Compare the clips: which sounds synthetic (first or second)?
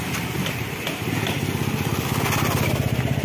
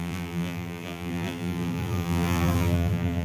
second